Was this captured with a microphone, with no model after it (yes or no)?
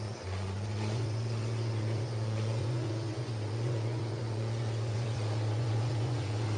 no